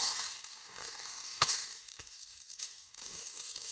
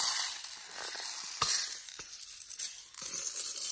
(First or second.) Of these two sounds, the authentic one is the second